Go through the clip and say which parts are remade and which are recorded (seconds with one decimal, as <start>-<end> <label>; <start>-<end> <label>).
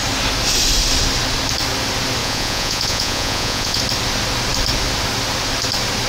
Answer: 0.0-2.2 recorded; 2.2-3.8 remade; 3.8-6.1 recorded